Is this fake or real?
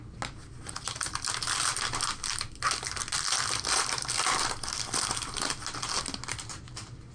real